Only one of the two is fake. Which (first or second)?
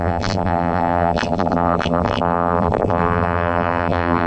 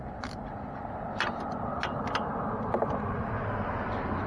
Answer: first